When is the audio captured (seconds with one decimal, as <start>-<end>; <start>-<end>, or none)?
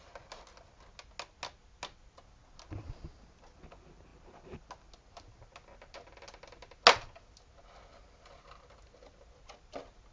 0.0-10.1